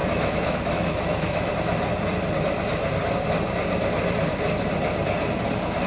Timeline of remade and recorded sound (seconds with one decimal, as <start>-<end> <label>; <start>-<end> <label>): 0.0-1.5 remade; 1.5-5.9 recorded